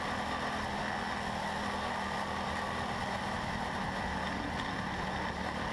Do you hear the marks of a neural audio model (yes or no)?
no